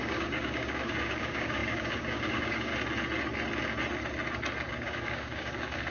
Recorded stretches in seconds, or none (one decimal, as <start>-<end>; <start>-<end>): 2.7-4.7